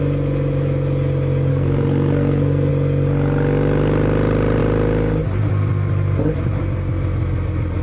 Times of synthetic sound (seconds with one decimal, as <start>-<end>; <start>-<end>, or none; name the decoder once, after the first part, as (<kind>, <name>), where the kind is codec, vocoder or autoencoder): 1.5-2.7 (codec, SNAC)